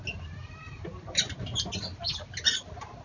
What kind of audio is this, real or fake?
real